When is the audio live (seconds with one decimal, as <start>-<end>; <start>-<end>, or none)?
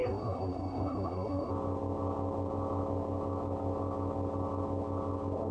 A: 1.5-5.5